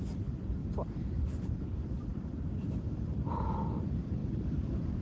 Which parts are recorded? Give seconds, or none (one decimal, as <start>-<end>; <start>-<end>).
4.2-5.0